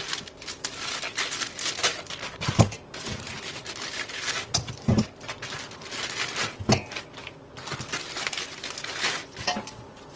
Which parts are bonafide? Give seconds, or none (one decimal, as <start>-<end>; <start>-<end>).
0.0-1.8; 5.4-10.2